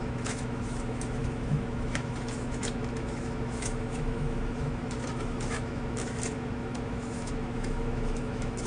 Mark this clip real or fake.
fake